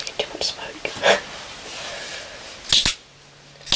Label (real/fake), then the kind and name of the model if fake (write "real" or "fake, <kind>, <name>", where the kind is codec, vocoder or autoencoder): real